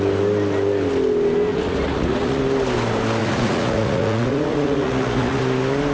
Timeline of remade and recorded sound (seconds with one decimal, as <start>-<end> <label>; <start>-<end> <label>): 0.0-1.5 recorded; 1.5-2.4 remade; 2.4-3.2 recorded; 3.2-5.4 remade; 5.4-5.9 recorded